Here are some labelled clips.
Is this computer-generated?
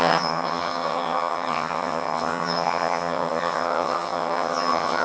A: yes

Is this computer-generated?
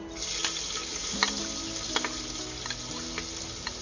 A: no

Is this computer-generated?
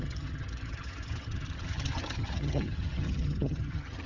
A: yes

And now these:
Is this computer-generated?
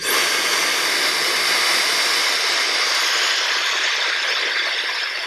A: no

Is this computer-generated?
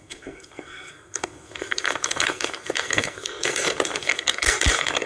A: yes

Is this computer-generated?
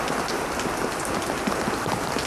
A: no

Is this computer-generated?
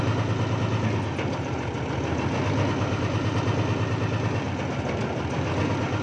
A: no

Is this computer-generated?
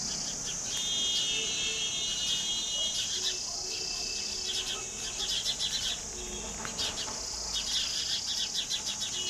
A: no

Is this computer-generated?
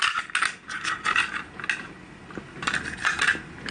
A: no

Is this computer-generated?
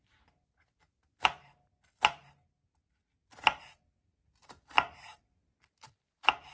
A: no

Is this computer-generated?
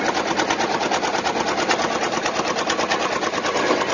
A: no